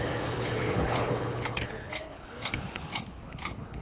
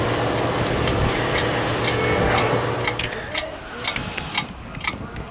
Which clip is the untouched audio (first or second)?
second